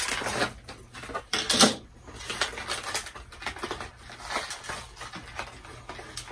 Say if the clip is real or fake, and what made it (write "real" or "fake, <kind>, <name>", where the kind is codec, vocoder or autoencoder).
real